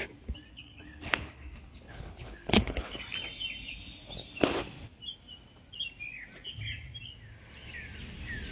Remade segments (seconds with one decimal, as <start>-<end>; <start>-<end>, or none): 0.5-3.0